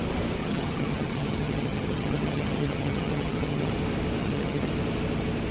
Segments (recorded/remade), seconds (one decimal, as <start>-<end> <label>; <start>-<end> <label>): 0.0-0.4 recorded; 0.4-3.7 remade; 3.7-4.2 recorded; 4.2-4.7 remade; 4.7-5.5 recorded